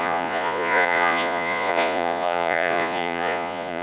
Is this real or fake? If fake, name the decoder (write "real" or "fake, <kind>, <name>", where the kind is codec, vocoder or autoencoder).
fake, vocoder, Vocos